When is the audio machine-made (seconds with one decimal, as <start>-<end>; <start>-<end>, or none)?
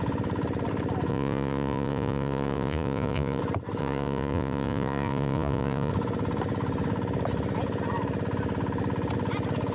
1.1-3.4; 3.8-5.9